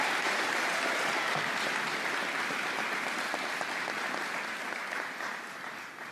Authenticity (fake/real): real